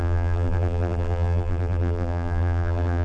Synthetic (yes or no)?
yes